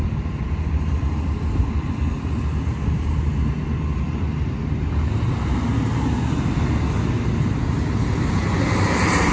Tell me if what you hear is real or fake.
real